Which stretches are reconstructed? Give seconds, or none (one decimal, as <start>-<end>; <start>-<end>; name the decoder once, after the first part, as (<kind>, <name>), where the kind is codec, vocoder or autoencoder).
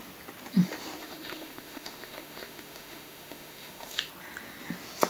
1.0-4.1 (autoencoder, DAC-VAE)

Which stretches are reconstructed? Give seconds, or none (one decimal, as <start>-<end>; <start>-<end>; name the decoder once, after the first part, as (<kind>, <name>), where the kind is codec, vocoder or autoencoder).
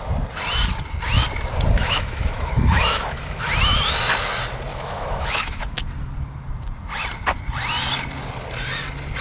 1.8-3.6 (autoencoder, DAC-VAE); 4.7-5.6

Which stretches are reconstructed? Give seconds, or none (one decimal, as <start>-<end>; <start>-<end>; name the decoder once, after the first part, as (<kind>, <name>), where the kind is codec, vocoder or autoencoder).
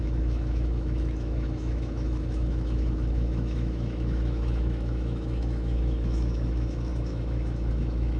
0.0-8.2 (autoencoder, DAC-VAE)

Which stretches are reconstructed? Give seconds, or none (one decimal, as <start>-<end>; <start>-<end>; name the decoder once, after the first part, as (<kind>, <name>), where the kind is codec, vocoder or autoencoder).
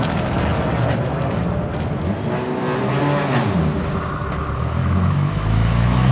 4.8-6.1 (autoencoder, DAC-VAE)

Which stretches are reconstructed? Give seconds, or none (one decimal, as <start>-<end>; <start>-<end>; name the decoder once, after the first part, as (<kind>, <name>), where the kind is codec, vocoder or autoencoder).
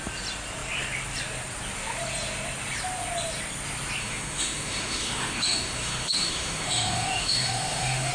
4.0-8.1 (autoencoder, DAC-VAE)